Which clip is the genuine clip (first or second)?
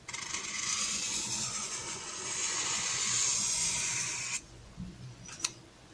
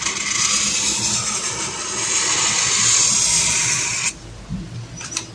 second